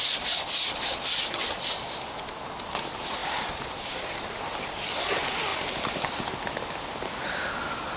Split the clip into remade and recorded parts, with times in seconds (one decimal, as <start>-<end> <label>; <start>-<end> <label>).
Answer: 0.0-3.2 recorded; 3.2-4.9 remade; 4.9-5.5 recorded; 5.5-6.3 remade; 6.3-8.0 recorded

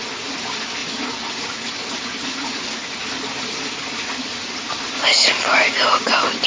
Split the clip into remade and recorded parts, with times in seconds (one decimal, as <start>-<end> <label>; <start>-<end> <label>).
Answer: 0.0-6.5 recorded

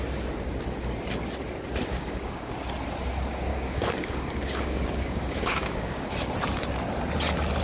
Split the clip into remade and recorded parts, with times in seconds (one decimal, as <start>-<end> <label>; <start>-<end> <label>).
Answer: 0.0-1.9 recorded; 1.9-2.5 remade; 2.5-3.5 recorded; 3.5-6.1 remade; 6.1-7.6 recorded

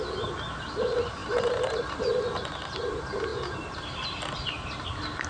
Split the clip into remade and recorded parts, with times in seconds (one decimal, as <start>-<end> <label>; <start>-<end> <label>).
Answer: 0.0-1.2 recorded; 1.2-2.0 remade; 2.0-5.3 recorded

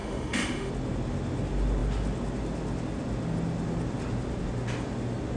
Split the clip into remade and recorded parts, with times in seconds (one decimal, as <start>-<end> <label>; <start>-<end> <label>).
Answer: 0.0-0.7 remade; 0.7-5.4 recorded